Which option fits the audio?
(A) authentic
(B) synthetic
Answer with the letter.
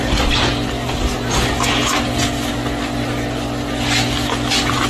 A